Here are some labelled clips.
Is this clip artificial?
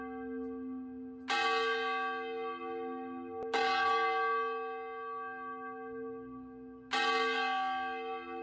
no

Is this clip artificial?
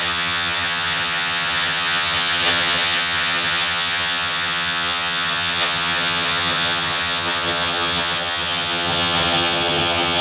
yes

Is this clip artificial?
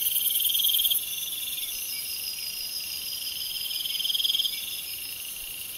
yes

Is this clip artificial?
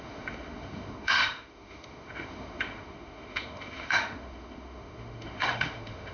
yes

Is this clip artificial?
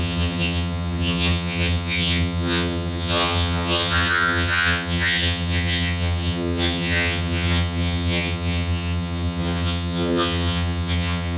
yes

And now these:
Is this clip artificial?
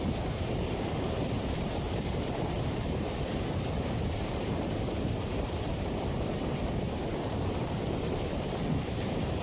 yes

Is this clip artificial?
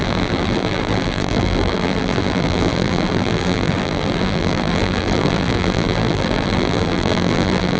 yes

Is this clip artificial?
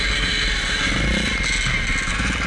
no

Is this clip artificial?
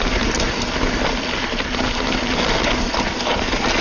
no